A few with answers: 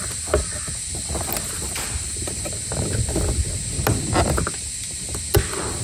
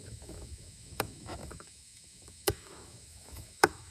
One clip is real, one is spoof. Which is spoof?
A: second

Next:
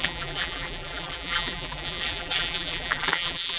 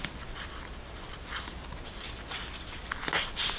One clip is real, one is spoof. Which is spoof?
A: first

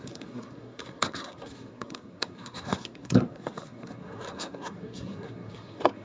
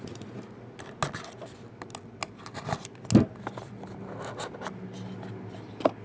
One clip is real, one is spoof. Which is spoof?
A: first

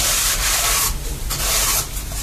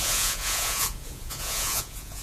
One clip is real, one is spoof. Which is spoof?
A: second